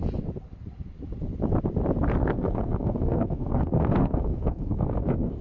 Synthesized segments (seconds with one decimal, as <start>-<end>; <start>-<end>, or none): 2.2-5.4